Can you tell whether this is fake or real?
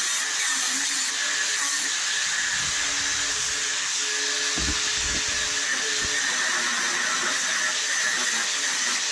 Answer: real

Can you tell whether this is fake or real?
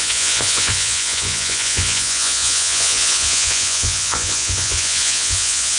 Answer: fake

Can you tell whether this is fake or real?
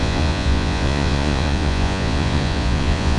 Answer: fake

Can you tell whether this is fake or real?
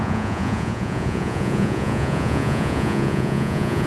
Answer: fake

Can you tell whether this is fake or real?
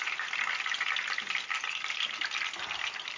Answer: real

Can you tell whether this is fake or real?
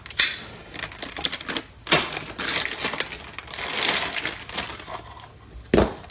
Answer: real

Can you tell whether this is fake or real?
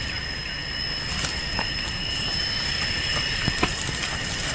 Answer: real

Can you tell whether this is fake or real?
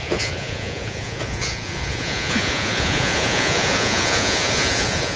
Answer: fake